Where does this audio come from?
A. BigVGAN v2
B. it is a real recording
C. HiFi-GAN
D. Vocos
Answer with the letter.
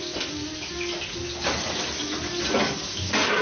B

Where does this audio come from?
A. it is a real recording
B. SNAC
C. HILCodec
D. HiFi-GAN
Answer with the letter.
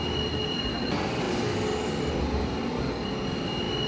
A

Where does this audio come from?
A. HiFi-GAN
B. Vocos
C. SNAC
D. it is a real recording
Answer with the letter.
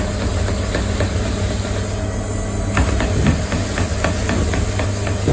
D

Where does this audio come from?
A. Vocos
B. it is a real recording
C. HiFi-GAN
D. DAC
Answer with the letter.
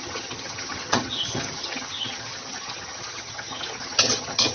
C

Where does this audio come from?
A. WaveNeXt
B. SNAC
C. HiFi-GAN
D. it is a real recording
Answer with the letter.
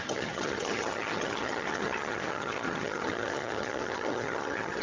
C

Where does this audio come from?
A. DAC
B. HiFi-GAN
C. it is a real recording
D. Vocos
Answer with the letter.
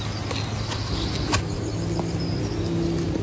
C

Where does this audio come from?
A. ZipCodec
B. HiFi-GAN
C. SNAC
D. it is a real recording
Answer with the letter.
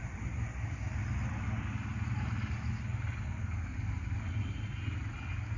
D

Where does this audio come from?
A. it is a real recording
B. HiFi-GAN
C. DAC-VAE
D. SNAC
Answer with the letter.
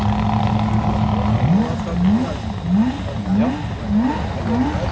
A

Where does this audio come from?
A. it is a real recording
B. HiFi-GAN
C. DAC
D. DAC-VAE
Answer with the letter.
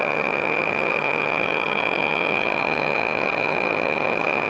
B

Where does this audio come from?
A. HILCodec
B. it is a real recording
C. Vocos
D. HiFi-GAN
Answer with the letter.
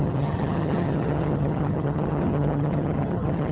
D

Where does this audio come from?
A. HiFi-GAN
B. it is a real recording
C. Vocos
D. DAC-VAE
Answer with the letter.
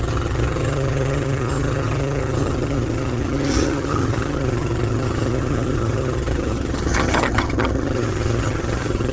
A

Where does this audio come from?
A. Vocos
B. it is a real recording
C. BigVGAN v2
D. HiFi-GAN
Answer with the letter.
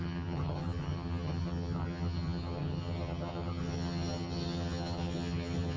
D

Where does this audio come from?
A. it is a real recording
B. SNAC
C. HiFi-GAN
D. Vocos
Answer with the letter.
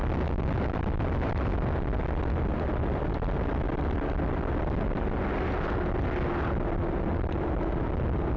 A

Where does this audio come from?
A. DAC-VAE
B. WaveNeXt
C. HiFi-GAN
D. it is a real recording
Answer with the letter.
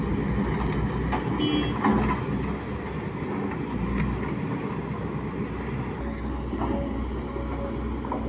D